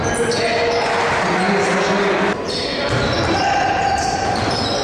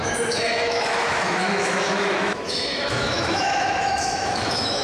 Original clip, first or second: first